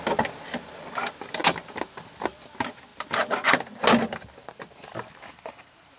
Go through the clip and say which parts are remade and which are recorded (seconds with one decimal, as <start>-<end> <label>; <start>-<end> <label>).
0.0-6.0 recorded